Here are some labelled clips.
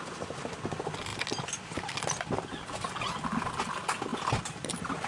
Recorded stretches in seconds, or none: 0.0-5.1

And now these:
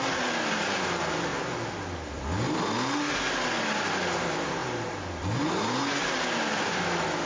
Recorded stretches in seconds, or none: 0.0-7.3

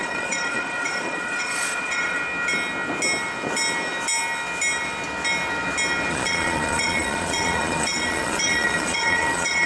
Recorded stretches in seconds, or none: 2.2-6.1

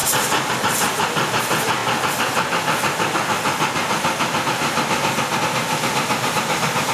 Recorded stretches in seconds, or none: 0.0-6.9

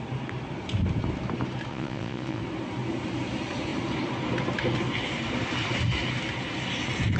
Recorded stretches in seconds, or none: 0.0-1.7; 2.4-7.2

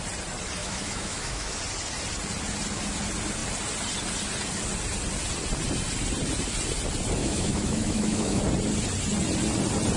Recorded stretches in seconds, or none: 0.0-0.6; 1.6-7.2; 8.4-10.0

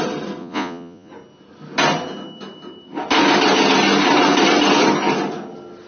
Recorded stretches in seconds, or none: 0.0-0.4; 1.1-5.9